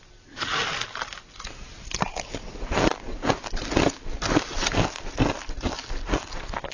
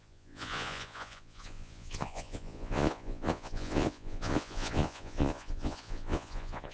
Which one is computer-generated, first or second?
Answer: second